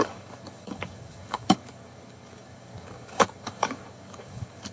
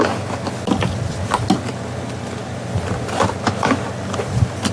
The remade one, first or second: first